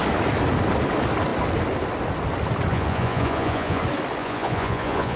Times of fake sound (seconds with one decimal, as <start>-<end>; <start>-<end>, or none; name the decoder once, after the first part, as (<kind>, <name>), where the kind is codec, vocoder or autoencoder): 2.7-3.8 (vocoder, Vocos); 4.2-5.2